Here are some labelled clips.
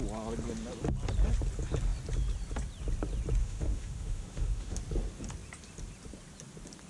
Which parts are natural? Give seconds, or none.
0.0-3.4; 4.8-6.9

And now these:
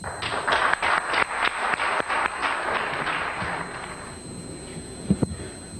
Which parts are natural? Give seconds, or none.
0.0-5.8

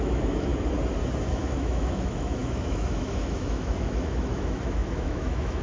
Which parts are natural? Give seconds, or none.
0.5-1.2

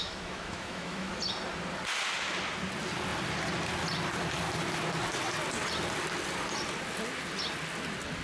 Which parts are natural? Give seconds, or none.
1.2-8.2